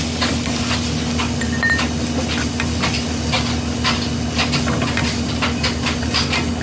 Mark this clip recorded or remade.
recorded